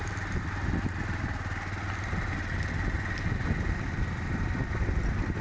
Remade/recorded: recorded